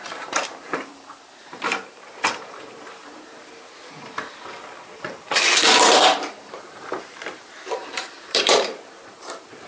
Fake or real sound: fake